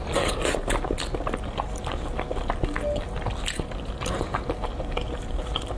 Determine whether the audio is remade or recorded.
recorded